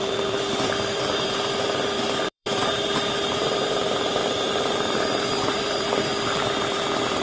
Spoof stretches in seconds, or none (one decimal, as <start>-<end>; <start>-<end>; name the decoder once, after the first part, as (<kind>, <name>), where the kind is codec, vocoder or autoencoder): 0.0-7.2 (vocoder, BigVGAN v2)